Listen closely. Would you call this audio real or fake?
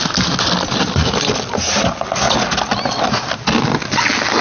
real